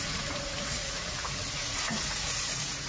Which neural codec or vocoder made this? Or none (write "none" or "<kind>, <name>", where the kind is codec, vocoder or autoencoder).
vocoder, Vocos